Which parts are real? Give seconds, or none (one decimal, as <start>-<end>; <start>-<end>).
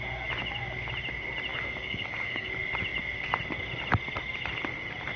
0.0-1.5; 2.5-5.2